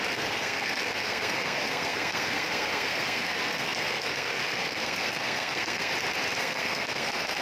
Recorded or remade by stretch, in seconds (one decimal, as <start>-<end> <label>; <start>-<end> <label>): 0.0-5.9 remade; 5.9-6.4 recorded; 6.4-7.4 remade